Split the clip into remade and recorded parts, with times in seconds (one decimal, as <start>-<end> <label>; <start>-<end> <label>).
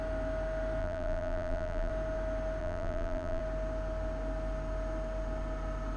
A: 0.0-0.8 recorded; 0.8-1.9 remade; 1.9-2.6 recorded; 2.6-3.4 remade; 3.4-6.0 recorded